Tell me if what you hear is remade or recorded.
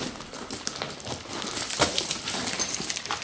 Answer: recorded